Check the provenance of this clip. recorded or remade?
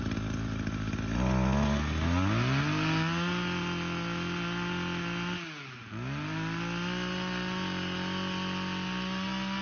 recorded